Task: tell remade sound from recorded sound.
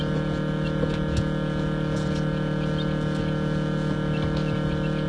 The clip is recorded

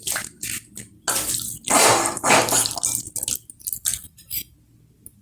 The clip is recorded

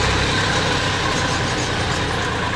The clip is recorded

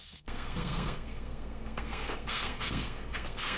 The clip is remade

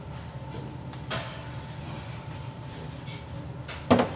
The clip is recorded